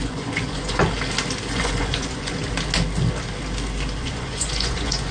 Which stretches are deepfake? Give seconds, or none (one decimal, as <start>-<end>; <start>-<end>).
0.0-0.8; 1.5-2.4; 4.0-5.1